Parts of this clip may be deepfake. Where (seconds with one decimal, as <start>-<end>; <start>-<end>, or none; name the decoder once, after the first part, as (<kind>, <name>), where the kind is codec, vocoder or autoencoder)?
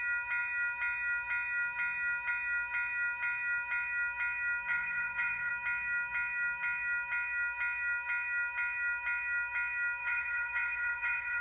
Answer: 4.7-5.5 (vocoder, Vocos); 10.0-11.4